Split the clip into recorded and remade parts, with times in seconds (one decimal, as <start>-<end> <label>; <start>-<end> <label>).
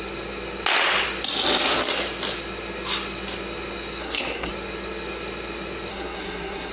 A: 0.0-4.0 recorded; 4.0-4.5 remade; 4.5-5.9 recorded; 5.9-6.7 remade